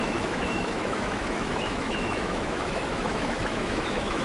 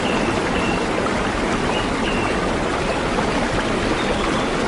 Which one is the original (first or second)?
second